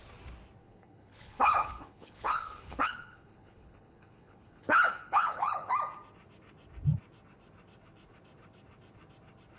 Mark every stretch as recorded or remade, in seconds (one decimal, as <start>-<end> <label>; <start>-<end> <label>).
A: 0.0-0.6 recorded; 0.6-5.7 remade; 5.7-9.6 recorded